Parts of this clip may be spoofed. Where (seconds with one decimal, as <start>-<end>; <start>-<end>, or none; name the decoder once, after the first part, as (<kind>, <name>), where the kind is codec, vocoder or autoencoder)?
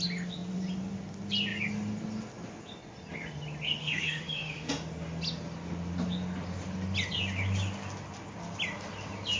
3.8-4.7 (autoencoder, DAC-VAE)